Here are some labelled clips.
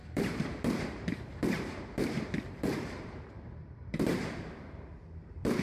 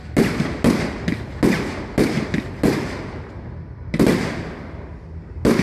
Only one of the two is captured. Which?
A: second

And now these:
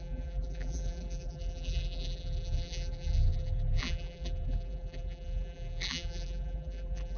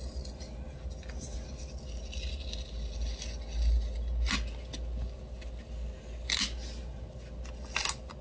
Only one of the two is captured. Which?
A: second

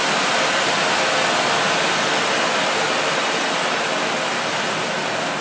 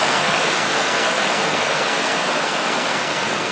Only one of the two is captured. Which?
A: first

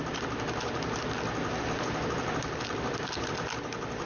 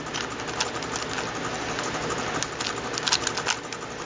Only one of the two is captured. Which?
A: second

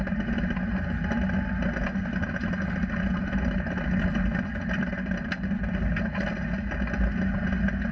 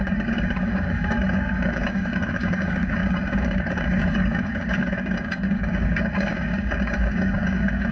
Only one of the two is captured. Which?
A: first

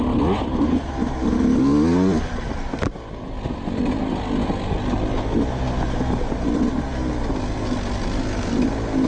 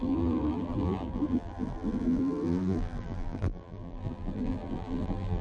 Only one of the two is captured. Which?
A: first